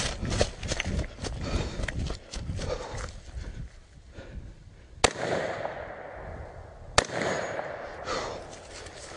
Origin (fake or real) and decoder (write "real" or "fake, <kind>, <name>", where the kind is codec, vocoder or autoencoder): real